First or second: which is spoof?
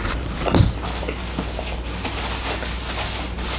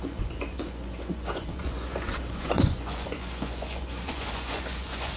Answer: second